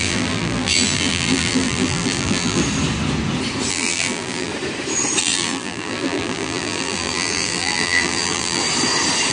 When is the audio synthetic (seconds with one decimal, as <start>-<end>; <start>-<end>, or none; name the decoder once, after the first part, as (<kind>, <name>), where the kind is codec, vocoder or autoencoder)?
0.0-2.6 (vocoder, BigVGAN v2); 3.7-4.5; 5.2-8.6